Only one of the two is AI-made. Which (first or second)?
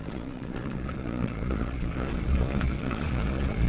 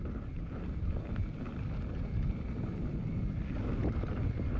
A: first